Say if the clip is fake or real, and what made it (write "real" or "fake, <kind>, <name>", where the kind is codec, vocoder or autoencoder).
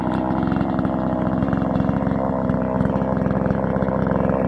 real